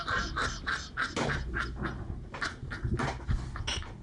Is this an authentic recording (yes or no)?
yes